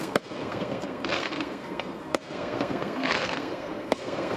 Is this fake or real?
fake